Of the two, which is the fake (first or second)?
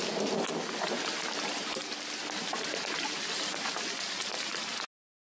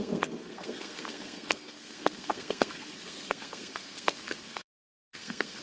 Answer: second